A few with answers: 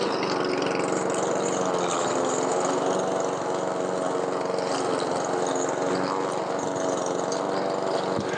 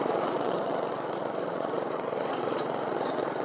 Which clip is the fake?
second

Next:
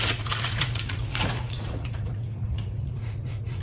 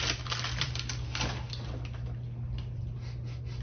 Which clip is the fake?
first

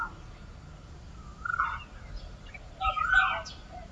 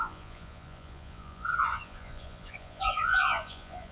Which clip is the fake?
second